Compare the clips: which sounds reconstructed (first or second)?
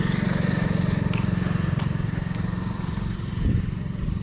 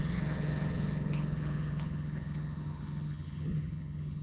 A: second